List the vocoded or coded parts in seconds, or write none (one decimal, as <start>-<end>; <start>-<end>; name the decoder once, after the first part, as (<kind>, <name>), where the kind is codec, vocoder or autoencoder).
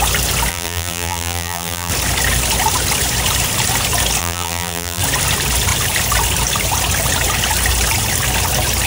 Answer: 0.5-1.9 (vocoder, BigVGAN v2); 4.2-5.0